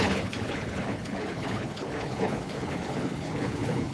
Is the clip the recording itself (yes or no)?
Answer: no